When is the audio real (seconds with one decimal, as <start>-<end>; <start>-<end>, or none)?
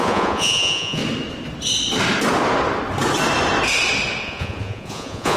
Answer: 1.0-4.2